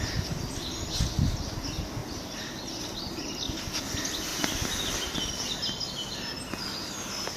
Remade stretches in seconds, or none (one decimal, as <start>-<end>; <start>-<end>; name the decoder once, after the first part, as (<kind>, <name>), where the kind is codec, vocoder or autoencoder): 2.0-2.6 (vocoder, BigVGAN v2); 4.3-5.3